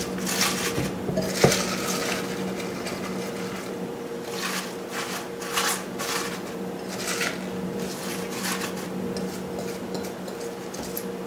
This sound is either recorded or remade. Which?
recorded